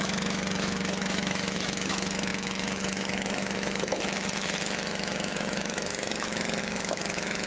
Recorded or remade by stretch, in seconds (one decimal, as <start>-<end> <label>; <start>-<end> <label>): 0.0-7.5 remade